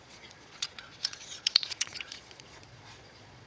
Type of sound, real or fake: fake